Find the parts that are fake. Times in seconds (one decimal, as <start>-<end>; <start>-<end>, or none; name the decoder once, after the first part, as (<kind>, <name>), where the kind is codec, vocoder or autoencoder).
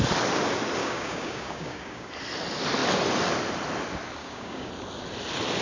0.8-2.1 (codec, DAC); 4.2-4.7